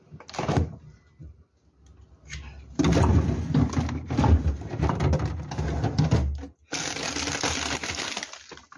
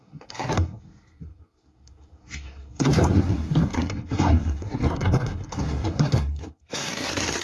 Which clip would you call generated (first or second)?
second